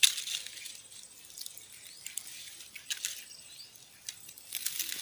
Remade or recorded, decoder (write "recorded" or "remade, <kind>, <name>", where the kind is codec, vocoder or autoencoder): remade, vocoder, BigVGAN v2